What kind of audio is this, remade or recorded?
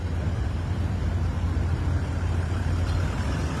remade